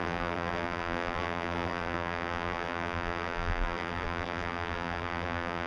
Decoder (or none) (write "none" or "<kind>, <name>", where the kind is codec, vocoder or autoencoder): vocoder, BigVGAN v2